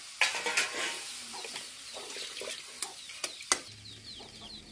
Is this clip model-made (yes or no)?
no